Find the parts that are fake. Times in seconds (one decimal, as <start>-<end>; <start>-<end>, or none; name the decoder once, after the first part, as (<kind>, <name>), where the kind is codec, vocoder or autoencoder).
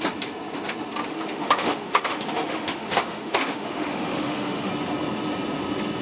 1.1-4.7 (autoencoder, DAC-VAE)